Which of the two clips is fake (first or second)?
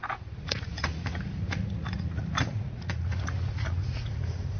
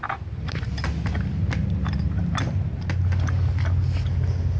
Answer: first